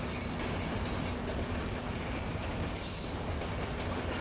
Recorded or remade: recorded